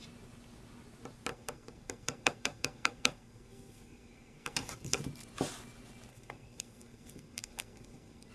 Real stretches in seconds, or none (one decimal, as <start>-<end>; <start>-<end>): 0.0-1.3; 5.0-6.1

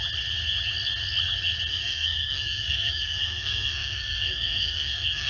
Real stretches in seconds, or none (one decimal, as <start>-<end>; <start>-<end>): 0.0-1.7

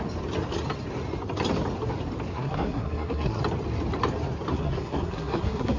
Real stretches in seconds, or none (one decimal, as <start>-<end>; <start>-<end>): 0.0-2.3; 3.4-4.5

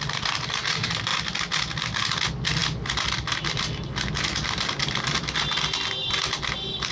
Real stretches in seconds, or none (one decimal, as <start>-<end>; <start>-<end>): 0.0-6.9

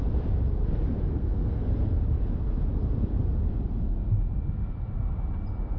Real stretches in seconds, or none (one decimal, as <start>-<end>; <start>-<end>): 0.0-1.1; 2.0-5.8

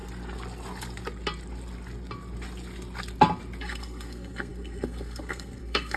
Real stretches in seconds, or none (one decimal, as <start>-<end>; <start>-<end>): 0.0-3.6

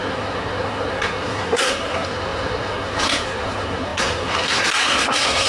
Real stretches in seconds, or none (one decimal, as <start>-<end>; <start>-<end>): none